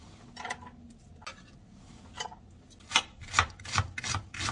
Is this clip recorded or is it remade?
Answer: recorded